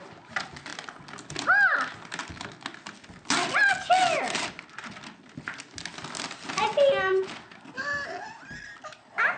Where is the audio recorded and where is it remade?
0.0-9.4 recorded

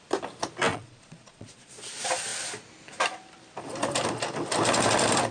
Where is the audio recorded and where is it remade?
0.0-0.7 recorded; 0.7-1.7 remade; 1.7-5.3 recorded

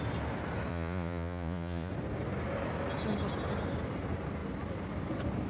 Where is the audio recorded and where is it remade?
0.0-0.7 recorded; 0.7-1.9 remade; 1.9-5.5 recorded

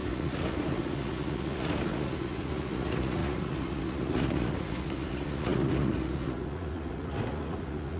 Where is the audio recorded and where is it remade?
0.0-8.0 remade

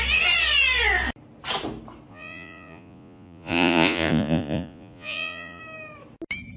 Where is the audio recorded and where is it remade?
0.0-2.1 recorded; 2.1-5.6 remade; 5.6-6.6 recorded

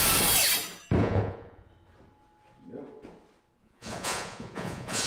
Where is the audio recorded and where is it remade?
0.0-1.0 recorded; 1.0-1.7 remade; 1.7-3.6 recorded; 3.6-5.1 remade

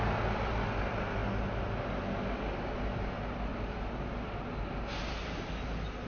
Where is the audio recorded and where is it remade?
0.0-6.1 recorded